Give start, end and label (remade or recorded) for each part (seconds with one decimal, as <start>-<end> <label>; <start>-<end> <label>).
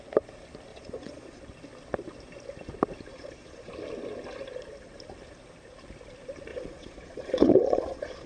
0.0-0.7 recorded; 0.7-1.4 remade; 1.4-3.1 recorded; 3.1-3.7 remade; 3.7-6.5 recorded; 6.5-8.3 remade